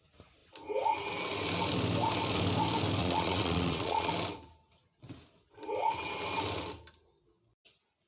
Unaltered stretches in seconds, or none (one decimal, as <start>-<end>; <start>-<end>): 0.0-3.0; 4.1-8.1